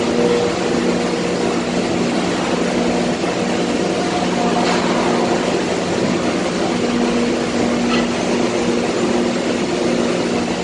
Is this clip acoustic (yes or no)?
yes